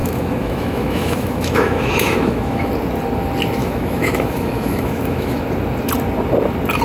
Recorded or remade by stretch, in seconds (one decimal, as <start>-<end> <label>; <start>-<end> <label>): 0.0-2.7 remade; 2.7-3.6 recorded; 3.6-5.4 remade; 5.4-6.8 recorded